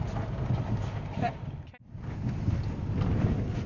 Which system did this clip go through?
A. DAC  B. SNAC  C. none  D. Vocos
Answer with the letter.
C